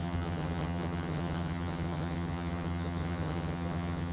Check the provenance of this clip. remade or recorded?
remade